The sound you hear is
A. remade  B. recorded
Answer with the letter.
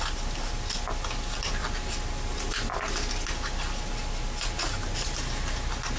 B